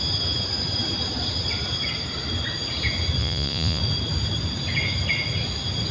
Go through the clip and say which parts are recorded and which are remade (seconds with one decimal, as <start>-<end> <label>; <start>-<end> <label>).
0.0-3.2 recorded; 3.2-3.8 remade; 3.8-5.9 recorded